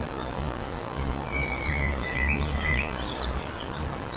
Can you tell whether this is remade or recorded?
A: remade